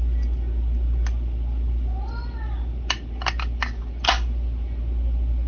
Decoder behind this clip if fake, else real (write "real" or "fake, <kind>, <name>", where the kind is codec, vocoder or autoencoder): real